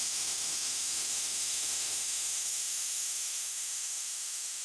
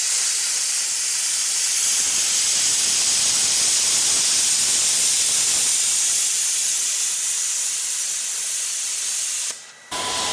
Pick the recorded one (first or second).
second